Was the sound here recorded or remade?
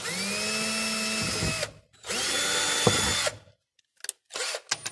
recorded